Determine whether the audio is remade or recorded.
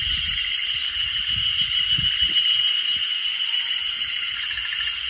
recorded